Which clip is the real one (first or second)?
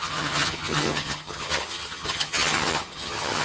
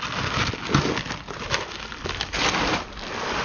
second